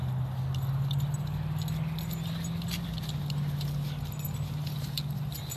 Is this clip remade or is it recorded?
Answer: recorded